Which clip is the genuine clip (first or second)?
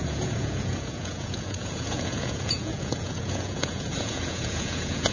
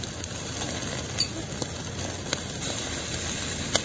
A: second